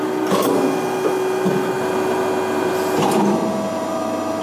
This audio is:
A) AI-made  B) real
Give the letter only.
B